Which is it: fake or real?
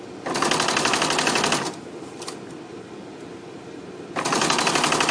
real